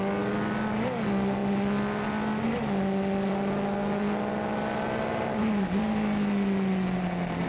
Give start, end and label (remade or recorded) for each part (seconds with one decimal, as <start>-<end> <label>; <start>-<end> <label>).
0.0-7.5 recorded